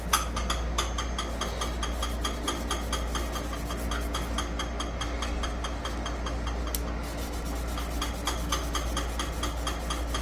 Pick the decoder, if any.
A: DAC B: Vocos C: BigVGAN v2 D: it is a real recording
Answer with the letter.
D